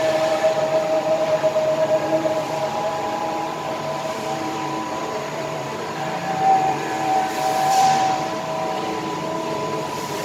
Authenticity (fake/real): fake